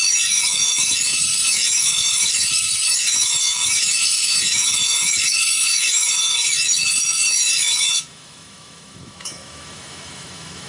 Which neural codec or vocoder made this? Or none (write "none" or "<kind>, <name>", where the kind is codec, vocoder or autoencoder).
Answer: autoencoder, DAC-VAE